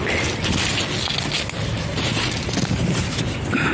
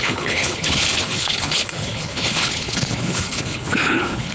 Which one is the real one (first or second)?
first